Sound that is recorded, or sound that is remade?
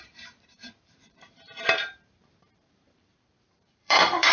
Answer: remade